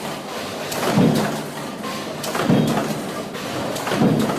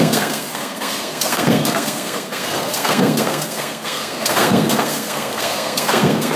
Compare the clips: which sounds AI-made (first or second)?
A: second